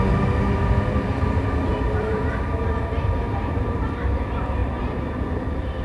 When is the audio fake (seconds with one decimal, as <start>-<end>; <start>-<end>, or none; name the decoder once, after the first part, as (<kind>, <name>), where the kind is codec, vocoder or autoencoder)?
1.7-4.0 (vocoder, BigVGAN v2); 4.6-5.8